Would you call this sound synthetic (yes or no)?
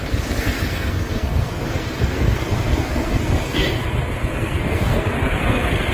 yes